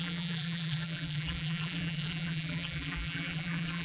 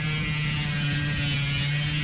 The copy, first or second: first